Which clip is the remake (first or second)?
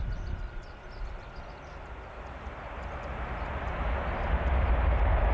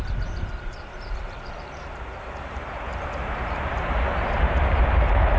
second